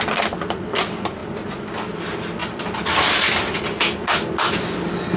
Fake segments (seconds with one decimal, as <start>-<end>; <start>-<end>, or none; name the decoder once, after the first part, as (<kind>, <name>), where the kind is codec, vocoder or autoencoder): none